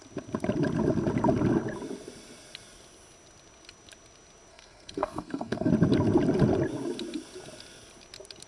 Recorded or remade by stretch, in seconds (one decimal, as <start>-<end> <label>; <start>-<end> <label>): 0.0-4.5 recorded; 4.5-5.7 remade; 5.7-8.5 recorded